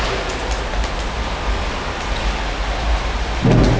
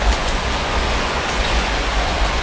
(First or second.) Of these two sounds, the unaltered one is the first